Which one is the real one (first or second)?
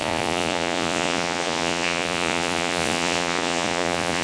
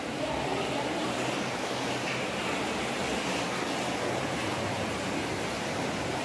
second